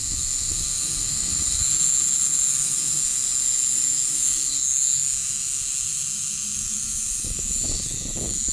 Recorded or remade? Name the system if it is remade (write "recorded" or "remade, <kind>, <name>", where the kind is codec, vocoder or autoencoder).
remade, autoencoder, DAC-VAE